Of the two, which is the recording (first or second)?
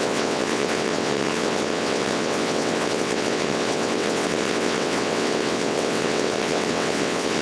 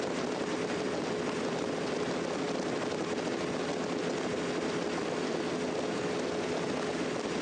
second